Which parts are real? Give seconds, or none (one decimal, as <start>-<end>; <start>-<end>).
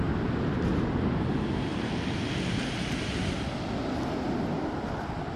0.0-5.4